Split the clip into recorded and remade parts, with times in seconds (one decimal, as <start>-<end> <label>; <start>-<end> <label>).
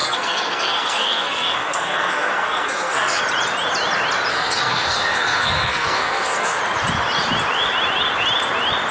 0.0-3.2 remade; 3.2-4.3 recorded; 4.3-6.6 remade; 6.6-8.9 recorded